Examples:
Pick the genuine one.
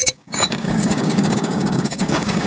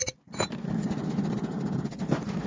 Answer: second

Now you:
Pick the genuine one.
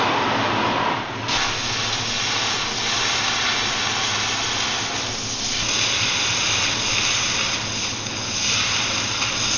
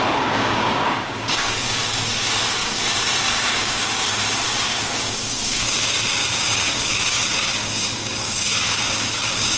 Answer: first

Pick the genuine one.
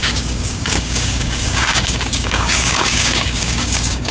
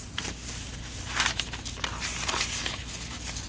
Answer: second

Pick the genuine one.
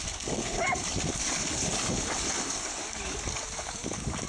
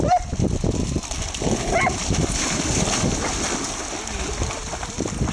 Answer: second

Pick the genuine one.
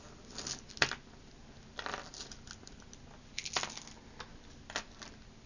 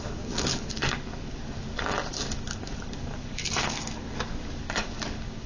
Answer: first